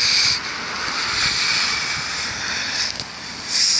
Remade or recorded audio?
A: recorded